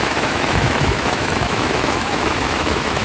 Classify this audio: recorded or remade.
remade